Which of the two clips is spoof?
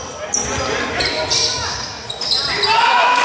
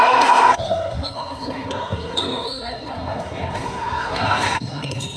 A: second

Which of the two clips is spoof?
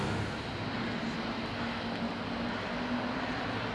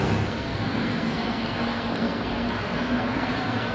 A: second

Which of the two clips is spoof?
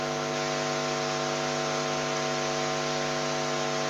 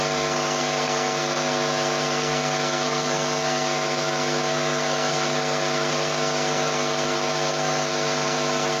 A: second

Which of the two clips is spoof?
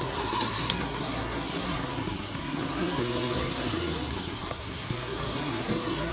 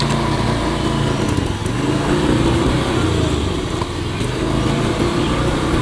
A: first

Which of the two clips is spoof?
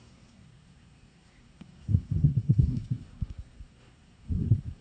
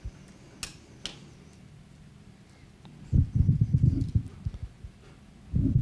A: first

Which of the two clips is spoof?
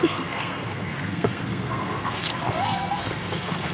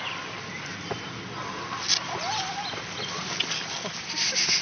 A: first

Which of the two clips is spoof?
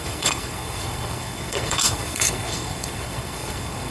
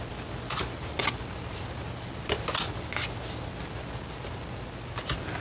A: first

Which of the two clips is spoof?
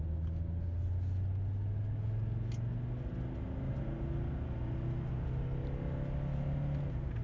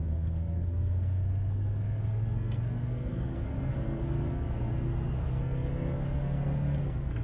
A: second